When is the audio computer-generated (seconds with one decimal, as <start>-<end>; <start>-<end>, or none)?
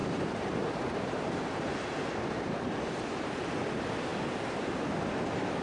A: 0.0-3.4